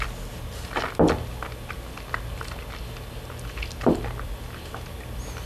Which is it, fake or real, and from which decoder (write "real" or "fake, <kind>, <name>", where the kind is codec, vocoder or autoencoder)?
real